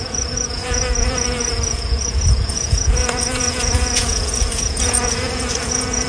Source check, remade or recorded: remade